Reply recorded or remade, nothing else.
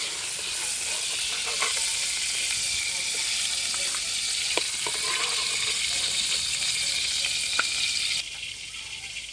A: recorded